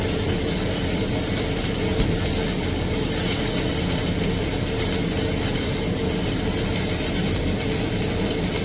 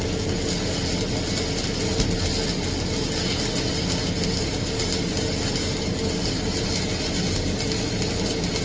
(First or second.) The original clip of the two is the second